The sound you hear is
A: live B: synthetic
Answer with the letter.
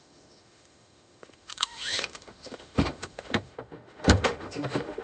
B